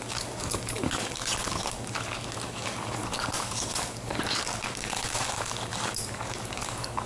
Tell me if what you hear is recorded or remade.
remade